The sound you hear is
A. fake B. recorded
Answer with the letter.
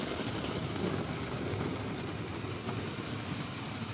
B